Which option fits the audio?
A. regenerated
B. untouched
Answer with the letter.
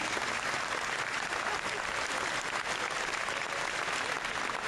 B